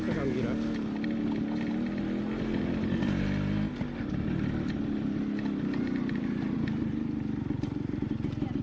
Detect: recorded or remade recorded